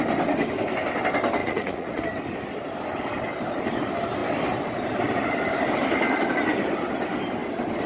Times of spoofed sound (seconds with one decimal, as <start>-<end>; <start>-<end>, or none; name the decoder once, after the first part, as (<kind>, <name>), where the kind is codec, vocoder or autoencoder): 1.4-2.0 (vocoder, Vocos)